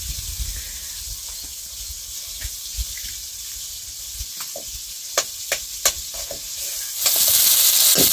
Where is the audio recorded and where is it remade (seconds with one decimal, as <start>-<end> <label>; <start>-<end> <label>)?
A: 0.0-8.1 recorded

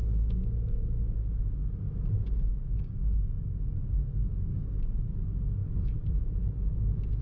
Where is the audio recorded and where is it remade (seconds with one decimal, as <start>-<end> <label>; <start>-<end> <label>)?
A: 0.0-1.0 remade; 1.0-2.5 recorded; 2.5-5.1 remade; 5.1-7.2 recorded

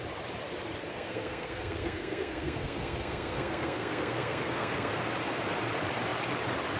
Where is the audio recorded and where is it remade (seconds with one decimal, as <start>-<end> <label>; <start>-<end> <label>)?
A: 0.0-0.9 recorded; 0.9-5.0 remade; 5.0-6.8 recorded

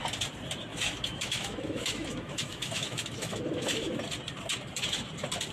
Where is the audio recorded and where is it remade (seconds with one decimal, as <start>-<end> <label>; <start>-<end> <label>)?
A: 0.0-0.7 recorded; 0.7-4.0 remade; 4.0-5.5 recorded